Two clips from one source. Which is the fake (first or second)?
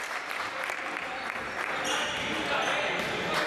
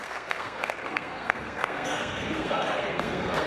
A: second